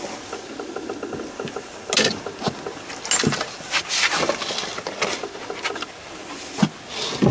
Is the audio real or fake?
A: real